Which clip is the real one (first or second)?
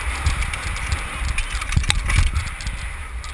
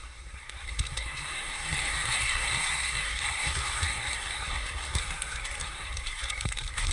first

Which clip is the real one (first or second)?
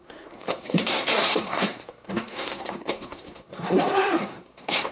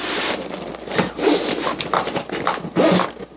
second